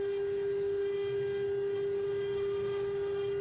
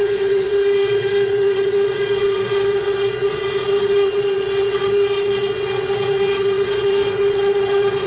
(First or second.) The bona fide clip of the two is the first